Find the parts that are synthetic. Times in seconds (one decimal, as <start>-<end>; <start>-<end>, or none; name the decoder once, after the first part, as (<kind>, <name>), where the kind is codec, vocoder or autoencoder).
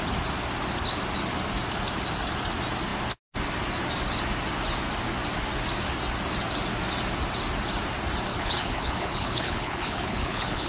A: 8.3-10.7 (codec, HILCodec)